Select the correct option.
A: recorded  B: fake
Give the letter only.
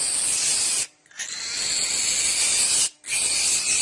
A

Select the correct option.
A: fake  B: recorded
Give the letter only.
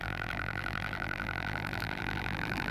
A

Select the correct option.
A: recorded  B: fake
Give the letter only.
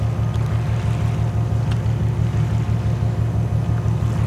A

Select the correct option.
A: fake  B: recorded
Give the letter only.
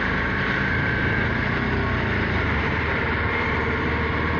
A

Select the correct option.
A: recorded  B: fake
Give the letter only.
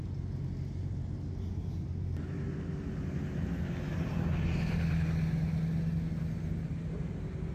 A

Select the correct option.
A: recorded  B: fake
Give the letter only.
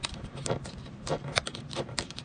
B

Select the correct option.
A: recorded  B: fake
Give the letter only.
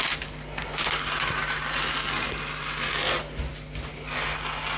A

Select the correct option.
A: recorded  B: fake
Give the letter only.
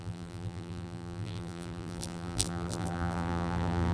B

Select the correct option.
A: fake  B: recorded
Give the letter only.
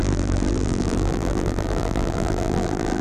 A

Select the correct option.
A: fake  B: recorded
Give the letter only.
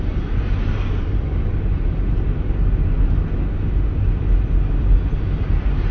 B